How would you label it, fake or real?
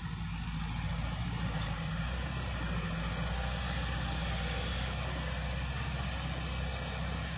real